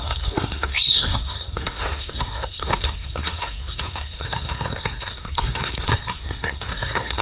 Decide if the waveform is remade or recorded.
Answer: remade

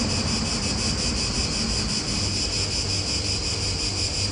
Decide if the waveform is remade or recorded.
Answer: recorded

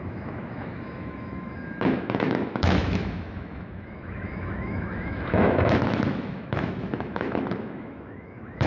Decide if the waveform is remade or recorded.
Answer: remade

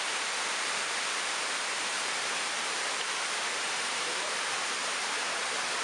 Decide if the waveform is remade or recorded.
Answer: remade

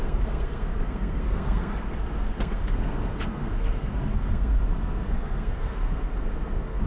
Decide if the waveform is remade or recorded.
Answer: remade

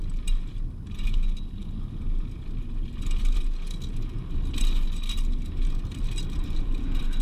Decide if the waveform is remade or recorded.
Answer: recorded